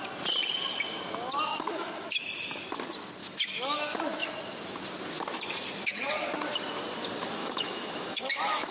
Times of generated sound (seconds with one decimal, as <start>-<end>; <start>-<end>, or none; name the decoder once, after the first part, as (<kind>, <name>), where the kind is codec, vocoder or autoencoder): 1.5-2.8 (autoencoder, DAC-VAE); 3.2-4.0; 7.4-8.7